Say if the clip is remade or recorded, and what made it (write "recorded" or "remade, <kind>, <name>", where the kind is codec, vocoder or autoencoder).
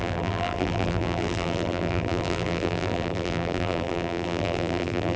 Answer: remade, vocoder, BigVGAN v2